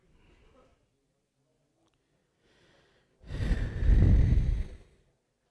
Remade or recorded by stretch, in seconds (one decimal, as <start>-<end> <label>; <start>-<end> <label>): 0.0-5.5 recorded